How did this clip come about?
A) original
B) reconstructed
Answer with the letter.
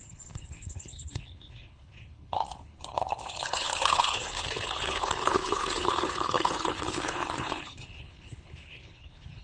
B